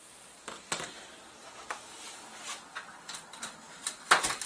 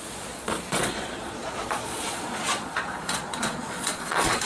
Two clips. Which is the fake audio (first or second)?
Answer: second